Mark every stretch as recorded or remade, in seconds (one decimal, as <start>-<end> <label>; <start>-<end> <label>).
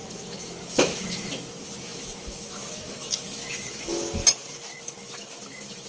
0.0-4.2 remade; 4.2-4.8 recorded; 4.8-5.9 remade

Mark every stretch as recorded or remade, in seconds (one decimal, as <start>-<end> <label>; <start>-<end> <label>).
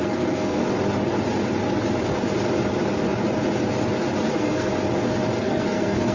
0.0-0.6 remade; 0.6-4.3 recorded; 4.3-4.7 remade; 4.7-5.4 recorded; 5.4-6.1 remade